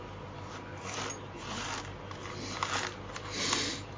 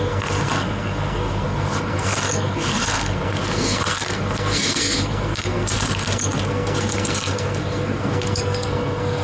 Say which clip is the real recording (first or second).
first